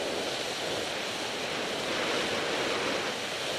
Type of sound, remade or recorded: recorded